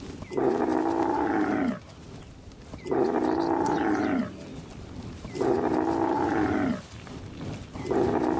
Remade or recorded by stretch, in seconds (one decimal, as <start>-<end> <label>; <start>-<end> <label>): 0.0-8.4 recorded